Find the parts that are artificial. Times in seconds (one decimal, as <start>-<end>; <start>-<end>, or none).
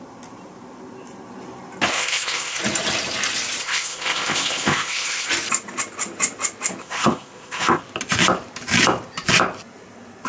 1.9-2.6; 3.6-5.3; 6.8-7.8